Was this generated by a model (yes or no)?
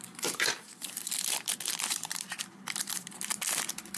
yes